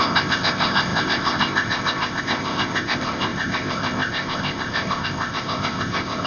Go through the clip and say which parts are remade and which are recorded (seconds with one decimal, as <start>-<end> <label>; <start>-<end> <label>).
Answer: 0.0-6.3 remade